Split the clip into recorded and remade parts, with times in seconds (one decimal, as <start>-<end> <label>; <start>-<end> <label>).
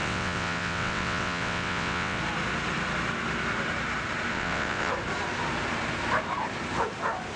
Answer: 0.0-2.2 remade; 2.2-4.3 recorded; 4.3-4.9 remade; 4.9-7.4 recorded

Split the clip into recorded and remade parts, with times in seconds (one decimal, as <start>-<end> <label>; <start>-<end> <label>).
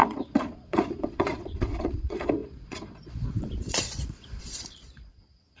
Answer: 0.0-5.6 remade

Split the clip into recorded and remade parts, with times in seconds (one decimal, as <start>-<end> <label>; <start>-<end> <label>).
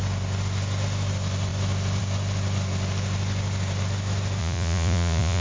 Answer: 0.0-4.4 recorded; 4.4-5.4 remade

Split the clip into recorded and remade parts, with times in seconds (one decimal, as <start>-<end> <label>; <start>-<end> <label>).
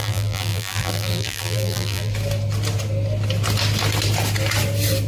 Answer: 0.0-2.1 remade; 2.1-5.1 recorded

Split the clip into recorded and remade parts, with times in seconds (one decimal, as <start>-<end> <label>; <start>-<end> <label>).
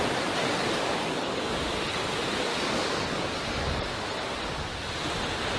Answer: 0.0-0.4 recorded; 0.4-1.4 remade; 1.4-2.5 recorded; 2.5-3.9 remade; 3.9-5.6 recorded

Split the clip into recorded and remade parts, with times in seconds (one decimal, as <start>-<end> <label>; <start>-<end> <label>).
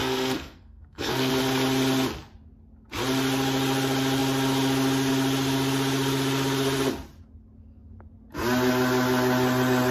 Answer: 0.0-1.3 remade; 1.3-9.9 recorded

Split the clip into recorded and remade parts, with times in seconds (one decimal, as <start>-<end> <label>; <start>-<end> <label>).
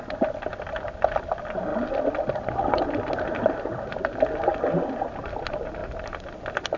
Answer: 0.0-6.8 recorded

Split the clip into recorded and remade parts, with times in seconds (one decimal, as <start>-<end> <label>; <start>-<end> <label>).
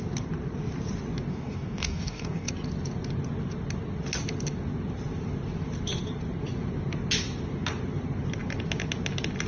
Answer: 0.0-1.3 recorded; 1.3-2.5 remade; 2.5-9.5 recorded